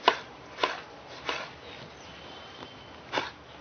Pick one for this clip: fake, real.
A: real